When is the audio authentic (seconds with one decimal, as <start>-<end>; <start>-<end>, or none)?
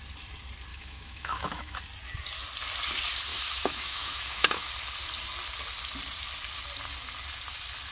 0.0-0.7; 1.8-3.3; 4.7-7.9